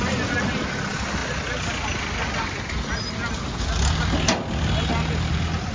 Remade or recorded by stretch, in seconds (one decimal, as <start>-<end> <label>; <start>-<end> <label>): 0.0-5.7 recorded